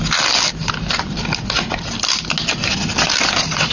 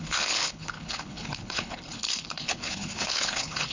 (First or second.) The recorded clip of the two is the first